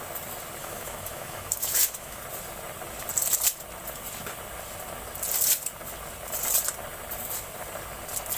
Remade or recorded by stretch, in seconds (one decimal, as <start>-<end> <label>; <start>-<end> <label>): 0.0-0.6 recorded; 0.6-2.2 remade; 2.2-8.4 recorded